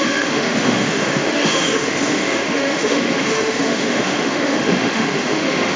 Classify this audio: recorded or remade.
remade